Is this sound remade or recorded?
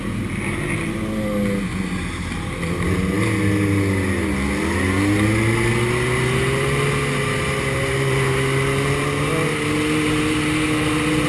recorded